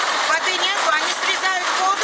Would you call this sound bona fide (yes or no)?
yes